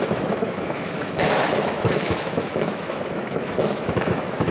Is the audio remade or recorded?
remade